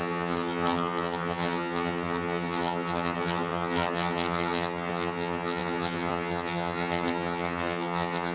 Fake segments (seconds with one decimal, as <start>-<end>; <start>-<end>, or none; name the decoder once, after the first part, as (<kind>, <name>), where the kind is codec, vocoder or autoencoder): 0.0-8.3 (vocoder, HiFi-GAN)